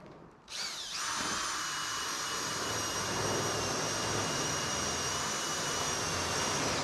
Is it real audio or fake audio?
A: fake